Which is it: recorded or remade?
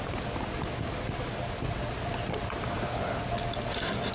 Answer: recorded